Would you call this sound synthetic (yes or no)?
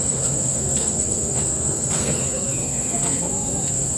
yes